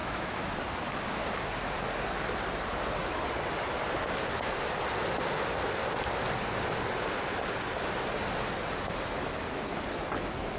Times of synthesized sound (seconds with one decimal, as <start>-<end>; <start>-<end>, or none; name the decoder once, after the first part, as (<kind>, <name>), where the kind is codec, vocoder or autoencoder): 0.0-0.5 (autoencoder, DAC-VAE)